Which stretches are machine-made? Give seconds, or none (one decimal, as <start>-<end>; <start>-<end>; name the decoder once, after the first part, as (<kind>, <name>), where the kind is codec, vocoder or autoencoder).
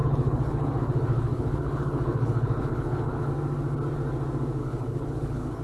0.0-3.3 (codec, HILCodec); 4.6-5.6